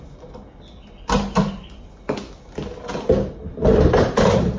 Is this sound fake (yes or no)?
no